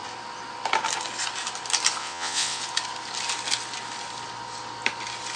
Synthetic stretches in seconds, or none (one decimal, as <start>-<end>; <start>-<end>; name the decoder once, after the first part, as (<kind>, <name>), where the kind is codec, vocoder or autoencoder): 2.0-2.6 (vocoder, WaveNeXt)